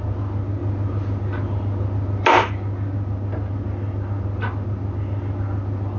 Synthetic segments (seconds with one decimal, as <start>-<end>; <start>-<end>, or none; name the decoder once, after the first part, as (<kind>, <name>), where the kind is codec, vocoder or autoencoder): none